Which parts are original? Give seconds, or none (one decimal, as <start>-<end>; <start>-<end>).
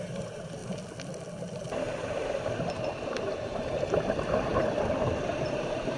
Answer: 0.6-2.7